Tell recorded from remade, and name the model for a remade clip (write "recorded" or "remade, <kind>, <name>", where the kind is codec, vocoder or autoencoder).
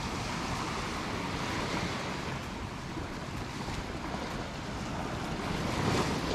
recorded